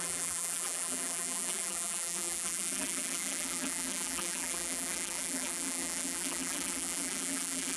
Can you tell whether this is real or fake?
fake